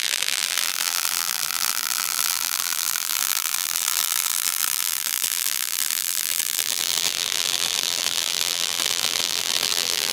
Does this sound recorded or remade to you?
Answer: remade